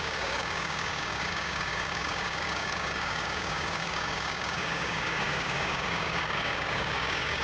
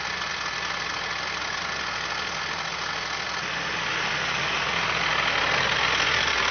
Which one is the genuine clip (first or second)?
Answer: second